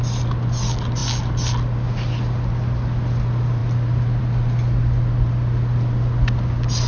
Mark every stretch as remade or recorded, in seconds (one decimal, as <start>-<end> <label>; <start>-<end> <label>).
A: 0.0-6.9 recorded